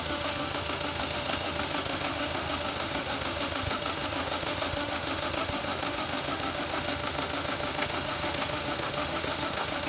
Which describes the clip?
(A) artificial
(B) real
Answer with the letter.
A